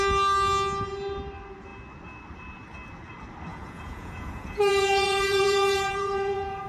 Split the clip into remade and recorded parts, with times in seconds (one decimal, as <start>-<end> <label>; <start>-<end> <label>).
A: 0.0-3.5 recorded; 3.5-6.7 remade